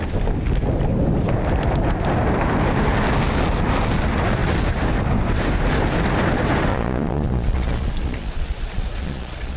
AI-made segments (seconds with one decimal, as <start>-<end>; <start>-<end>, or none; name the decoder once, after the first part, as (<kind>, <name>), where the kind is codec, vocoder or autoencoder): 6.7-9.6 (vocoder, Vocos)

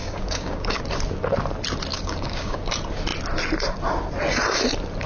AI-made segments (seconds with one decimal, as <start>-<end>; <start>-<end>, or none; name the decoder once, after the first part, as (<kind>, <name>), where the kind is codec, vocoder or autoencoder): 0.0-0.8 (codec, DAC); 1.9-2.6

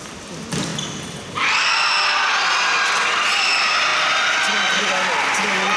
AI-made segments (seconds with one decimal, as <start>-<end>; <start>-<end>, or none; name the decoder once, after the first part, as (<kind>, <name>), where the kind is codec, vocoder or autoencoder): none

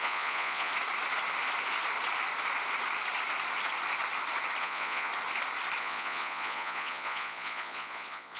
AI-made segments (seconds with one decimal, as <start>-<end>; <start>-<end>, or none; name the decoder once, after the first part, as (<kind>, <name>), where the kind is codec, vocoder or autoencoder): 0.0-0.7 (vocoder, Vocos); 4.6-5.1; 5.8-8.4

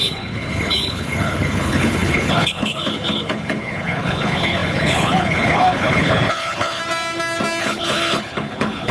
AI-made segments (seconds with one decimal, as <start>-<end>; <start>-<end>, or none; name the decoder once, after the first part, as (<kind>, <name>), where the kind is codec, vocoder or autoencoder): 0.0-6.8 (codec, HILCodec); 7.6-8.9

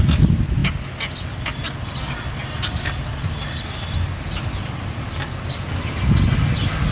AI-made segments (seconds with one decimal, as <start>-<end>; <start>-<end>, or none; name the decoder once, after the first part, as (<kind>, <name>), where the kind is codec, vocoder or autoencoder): none